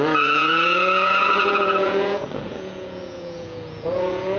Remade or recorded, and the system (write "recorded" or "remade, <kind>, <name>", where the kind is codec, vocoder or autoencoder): remade, vocoder, Vocos